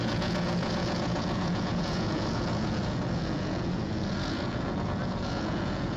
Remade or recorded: remade